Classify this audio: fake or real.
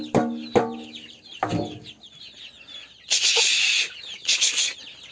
real